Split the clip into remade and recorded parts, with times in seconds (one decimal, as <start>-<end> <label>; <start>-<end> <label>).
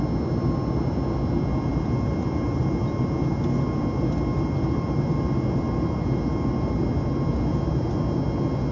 0.0-8.7 recorded